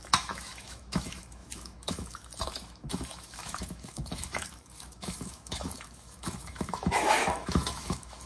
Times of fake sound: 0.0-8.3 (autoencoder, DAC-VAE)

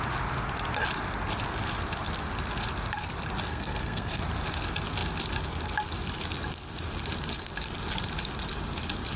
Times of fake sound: 3.5-4.2 (codec, SNAC)

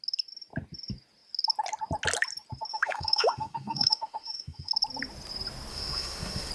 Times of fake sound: 2.7-4.7 (autoencoder, DAC-VAE); 5.7-6.5